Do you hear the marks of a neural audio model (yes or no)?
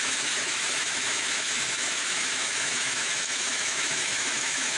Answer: yes